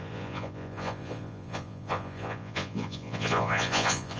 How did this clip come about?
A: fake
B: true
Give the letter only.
A